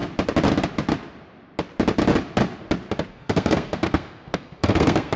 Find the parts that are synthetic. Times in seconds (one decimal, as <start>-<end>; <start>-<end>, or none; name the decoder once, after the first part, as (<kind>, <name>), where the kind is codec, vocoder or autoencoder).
3.1-5.2 (codec, SNAC)